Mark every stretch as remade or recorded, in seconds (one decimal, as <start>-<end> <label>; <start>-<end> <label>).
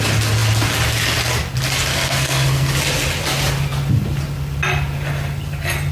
0.0-1.9 recorded; 1.9-2.7 remade; 2.7-5.9 recorded